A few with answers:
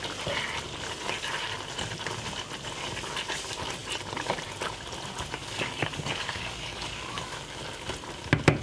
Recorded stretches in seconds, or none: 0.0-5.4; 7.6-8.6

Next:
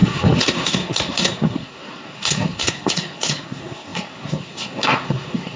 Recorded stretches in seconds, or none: none

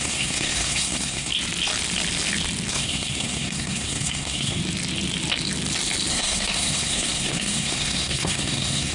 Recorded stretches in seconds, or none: 1.3-2.7; 4.6-6.1